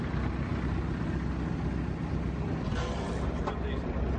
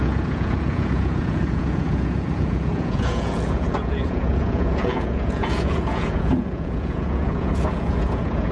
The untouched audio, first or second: first